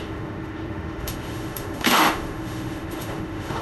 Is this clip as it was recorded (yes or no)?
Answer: no